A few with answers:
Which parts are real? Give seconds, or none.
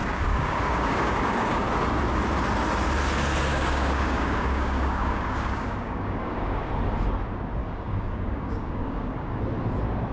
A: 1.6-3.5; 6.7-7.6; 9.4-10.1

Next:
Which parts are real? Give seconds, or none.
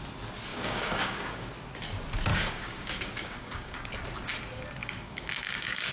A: 0.0-0.5; 1.5-2.3; 3.9-4.8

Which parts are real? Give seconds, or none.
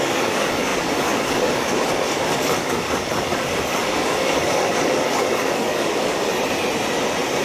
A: 6.3-7.4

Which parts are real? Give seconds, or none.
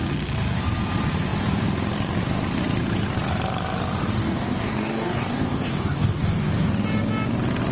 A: 0.0-4.2; 6.7-7.7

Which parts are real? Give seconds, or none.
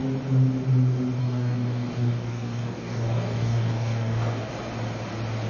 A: 0.0-1.2; 4.5-5.5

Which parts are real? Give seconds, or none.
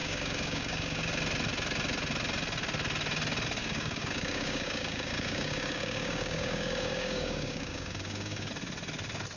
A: 1.1-3.6; 8.5-9.4